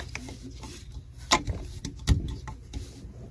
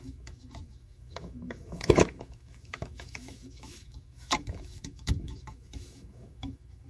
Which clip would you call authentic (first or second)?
first